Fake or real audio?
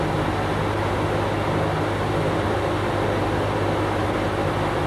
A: real